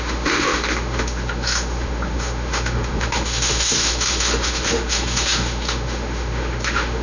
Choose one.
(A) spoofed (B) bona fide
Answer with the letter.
A